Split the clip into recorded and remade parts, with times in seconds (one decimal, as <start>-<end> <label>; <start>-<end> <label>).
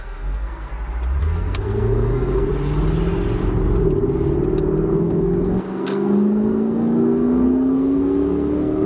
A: 0.0-0.7 remade; 0.7-1.2 recorded; 1.2-2.5 remade; 2.5-4.9 recorded; 4.9-8.9 remade